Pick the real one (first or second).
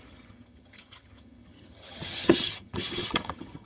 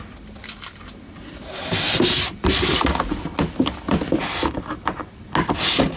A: second